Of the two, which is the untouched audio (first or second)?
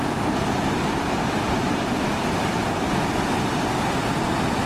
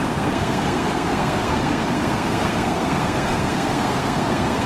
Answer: first